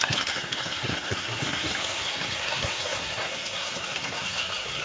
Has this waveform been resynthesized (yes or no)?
yes